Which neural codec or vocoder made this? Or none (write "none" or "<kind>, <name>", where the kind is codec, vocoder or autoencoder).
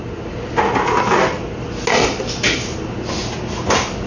none